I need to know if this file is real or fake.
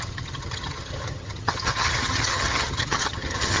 fake